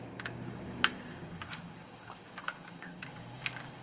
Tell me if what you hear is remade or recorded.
remade